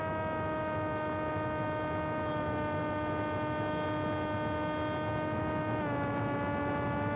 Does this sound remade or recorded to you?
recorded